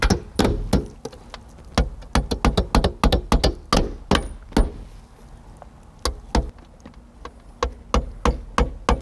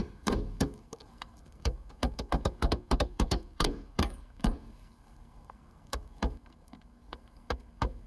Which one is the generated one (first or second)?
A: second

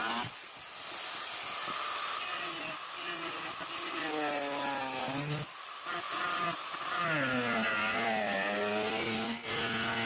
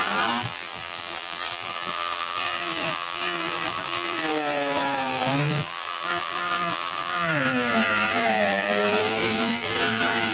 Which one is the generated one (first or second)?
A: second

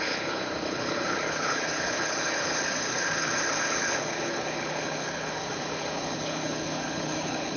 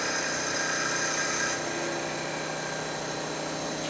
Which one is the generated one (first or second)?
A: first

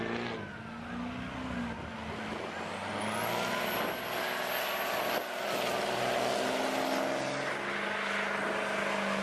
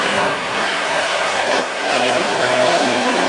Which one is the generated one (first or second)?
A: second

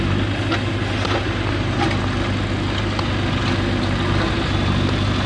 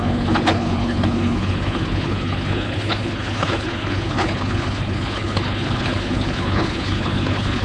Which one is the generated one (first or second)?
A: second